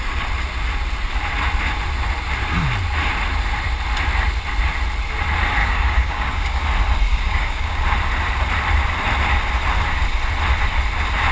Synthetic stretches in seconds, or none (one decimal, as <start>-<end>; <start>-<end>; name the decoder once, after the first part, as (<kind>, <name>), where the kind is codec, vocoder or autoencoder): 5.6-6.6 (codec, DAC); 7.1-7.8